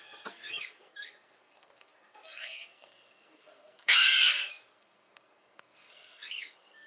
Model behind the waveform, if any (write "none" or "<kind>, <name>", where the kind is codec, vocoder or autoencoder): codec, SNAC